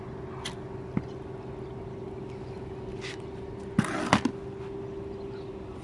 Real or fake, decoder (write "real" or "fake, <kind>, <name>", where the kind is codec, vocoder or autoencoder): real